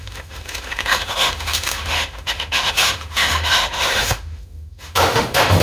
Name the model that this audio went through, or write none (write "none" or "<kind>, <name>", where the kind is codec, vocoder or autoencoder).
autoencoder, DAC-VAE